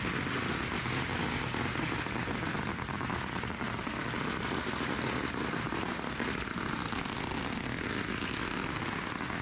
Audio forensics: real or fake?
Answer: real